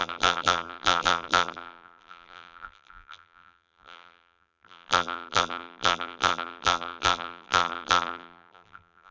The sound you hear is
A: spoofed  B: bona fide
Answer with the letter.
A